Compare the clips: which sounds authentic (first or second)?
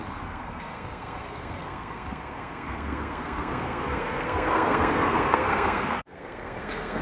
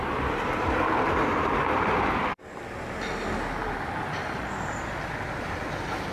second